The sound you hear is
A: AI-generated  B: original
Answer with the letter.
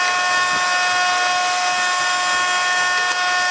B